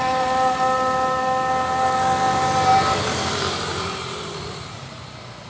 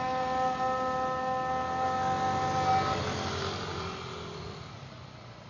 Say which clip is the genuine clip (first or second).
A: second